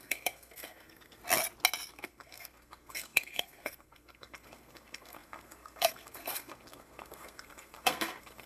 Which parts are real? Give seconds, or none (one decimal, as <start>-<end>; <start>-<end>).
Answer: 1.2-1.9